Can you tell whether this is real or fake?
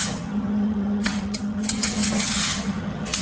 fake